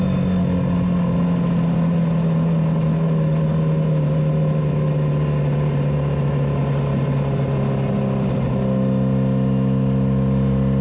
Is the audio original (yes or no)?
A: yes